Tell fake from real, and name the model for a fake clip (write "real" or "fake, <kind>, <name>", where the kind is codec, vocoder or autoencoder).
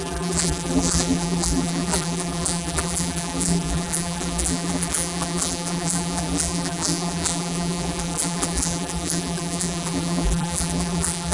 fake, vocoder, BigVGAN v2